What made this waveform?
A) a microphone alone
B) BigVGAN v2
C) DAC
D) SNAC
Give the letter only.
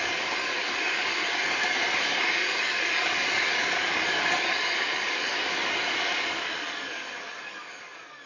C